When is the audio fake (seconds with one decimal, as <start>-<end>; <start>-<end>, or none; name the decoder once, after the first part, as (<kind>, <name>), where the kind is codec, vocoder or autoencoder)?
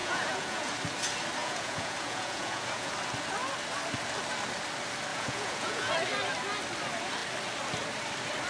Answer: 0.0-0.7 (vocoder, Vocos); 1.4-2.9; 5.1-5.9